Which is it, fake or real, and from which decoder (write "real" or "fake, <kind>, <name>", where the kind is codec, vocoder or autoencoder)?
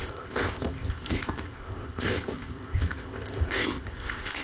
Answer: fake, codec, ZipCodec